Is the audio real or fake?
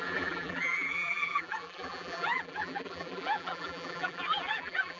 fake